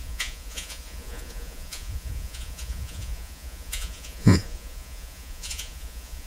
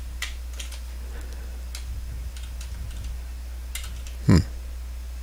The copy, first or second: first